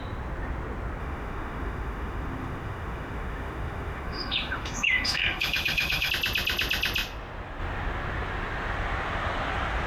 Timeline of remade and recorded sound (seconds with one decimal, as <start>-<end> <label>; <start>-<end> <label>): 0.0-1.0 recorded; 1.0-6.1 remade; 6.1-9.9 recorded